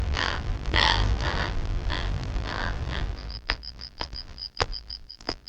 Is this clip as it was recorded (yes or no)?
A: no